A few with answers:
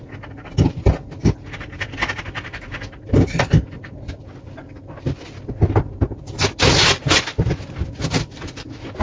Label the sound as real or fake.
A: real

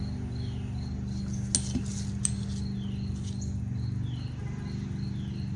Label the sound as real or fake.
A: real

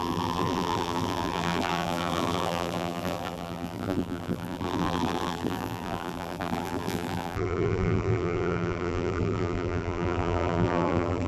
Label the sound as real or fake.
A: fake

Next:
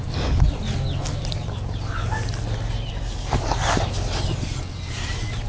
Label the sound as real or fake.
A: real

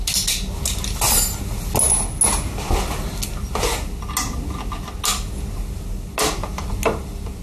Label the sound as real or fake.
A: real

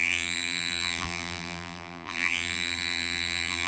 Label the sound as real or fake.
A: fake